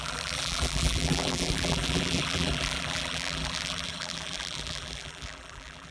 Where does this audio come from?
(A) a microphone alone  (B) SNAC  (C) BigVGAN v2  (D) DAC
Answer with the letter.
C